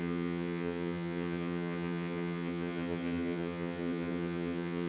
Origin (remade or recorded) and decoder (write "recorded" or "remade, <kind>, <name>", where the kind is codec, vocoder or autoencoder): remade, vocoder, HiFi-GAN